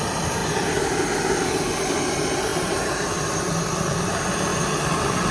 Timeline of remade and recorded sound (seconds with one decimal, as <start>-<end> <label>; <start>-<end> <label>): 0.0-2.5 recorded; 2.5-3.9 remade; 3.9-5.3 recorded